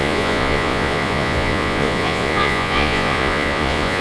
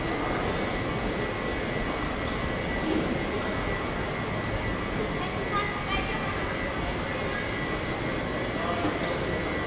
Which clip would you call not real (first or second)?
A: first